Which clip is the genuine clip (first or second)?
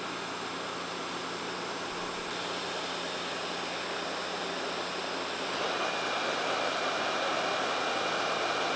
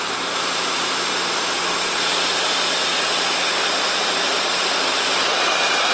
first